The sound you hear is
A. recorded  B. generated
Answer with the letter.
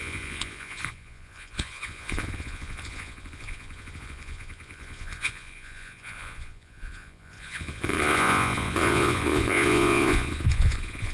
B